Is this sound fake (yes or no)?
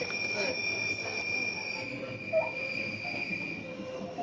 no